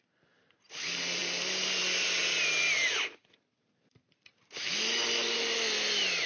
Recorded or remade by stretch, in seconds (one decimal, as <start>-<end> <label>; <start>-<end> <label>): 0.0-6.3 recorded